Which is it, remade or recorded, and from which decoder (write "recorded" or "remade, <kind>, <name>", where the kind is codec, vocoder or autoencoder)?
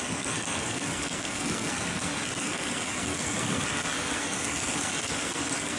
remade, codec, SNAC